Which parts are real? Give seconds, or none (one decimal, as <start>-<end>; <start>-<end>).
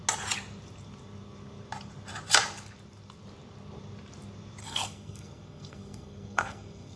0.0-4.6